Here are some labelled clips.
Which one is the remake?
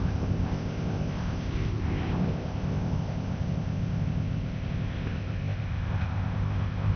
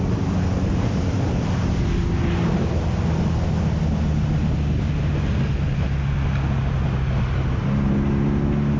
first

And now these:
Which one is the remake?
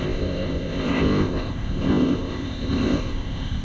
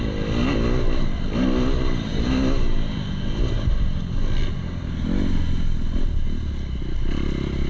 first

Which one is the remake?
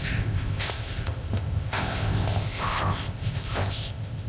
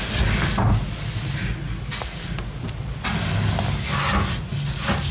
first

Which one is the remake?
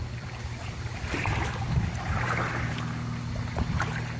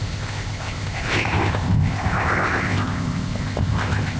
second